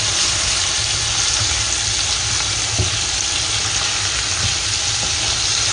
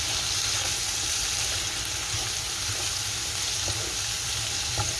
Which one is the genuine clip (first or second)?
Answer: first